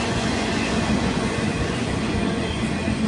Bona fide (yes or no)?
no